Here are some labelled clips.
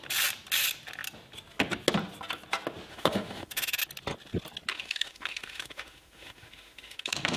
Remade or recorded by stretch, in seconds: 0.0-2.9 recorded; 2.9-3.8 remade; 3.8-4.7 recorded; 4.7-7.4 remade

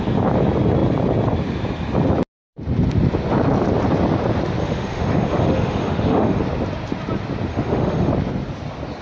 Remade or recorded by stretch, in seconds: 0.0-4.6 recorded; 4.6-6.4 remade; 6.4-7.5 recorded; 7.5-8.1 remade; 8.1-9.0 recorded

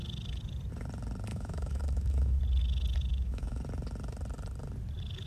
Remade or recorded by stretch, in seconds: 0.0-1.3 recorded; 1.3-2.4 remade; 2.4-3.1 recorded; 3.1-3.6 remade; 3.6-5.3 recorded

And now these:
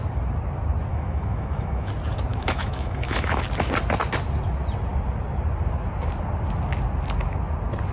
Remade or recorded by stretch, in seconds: 0.0-0.9 recorded; 0.9-1.9 remade; 1.9-2.3 recorded; 2.3-3.4 remade; 3.4-7.9 recorded